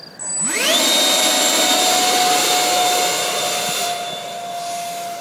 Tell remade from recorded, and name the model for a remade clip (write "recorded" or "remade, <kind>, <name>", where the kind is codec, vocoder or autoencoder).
recorded